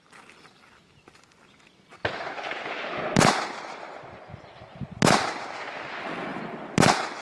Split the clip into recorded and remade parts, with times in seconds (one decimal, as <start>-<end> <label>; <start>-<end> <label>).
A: 0.0-7.2 recorded